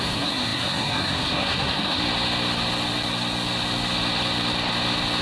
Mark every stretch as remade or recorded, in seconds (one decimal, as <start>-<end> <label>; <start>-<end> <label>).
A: 0.0-2.0 remade; 2.0-5.2 recorded